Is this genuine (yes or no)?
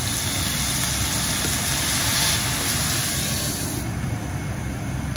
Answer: yes